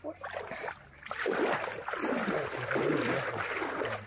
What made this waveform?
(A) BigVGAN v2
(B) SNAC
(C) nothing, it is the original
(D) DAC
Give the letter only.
C